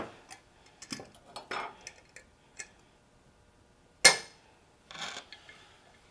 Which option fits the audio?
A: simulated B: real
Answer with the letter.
B